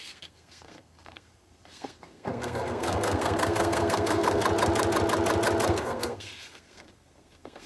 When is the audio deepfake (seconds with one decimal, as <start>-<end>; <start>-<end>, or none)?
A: 0.0-4.4; 5.7-7.7